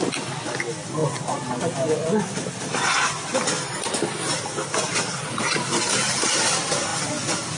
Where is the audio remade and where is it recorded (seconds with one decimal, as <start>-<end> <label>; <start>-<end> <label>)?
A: 0.0-7.6 recorded